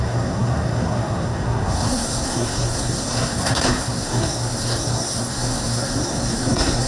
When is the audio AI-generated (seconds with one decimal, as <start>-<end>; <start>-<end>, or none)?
0.0-6.9